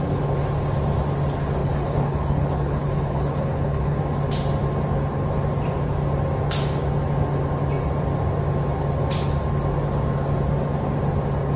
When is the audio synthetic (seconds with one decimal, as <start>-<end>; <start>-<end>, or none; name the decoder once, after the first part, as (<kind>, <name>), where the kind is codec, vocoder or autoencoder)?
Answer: 1.6-4.0 (codec, HILCodec)